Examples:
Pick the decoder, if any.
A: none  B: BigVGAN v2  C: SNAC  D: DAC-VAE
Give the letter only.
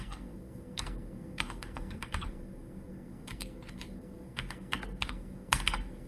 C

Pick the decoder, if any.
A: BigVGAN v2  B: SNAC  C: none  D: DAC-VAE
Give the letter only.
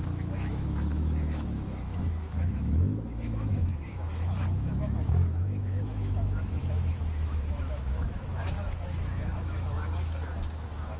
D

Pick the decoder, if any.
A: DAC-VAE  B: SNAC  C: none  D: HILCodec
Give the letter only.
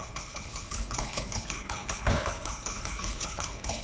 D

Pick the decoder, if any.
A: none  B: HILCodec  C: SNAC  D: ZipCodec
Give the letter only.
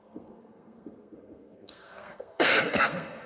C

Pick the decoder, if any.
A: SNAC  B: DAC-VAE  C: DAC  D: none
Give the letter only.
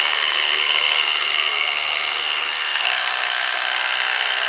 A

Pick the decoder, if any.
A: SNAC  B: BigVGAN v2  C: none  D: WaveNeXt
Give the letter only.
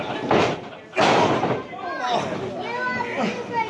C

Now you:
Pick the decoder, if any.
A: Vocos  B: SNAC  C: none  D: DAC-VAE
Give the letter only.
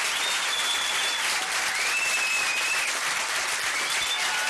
C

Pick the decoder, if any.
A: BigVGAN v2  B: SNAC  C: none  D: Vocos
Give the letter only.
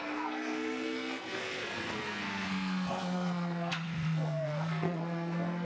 B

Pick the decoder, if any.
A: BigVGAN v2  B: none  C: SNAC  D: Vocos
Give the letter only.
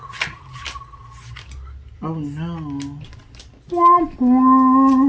B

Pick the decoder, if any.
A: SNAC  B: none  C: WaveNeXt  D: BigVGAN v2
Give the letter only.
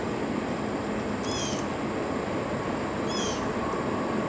B